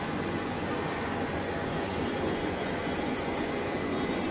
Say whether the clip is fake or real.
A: fake